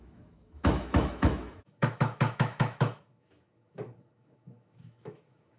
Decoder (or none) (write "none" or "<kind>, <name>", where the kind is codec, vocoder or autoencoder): autoencoder, DAC-VAE